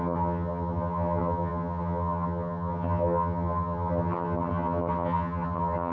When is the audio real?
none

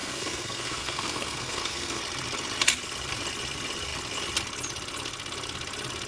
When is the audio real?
2.0-6.1

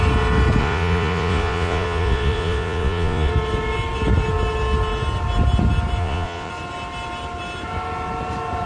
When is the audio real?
0.0-0.6; 3.3-6.0; 6.5-8.7

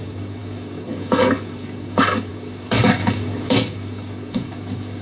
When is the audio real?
none

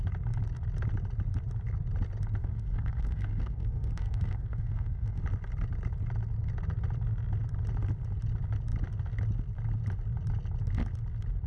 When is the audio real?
0.0-2.4; 5.2-11.5

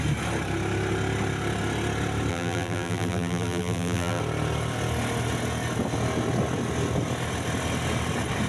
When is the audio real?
0.0-2.3; 4.2-8.5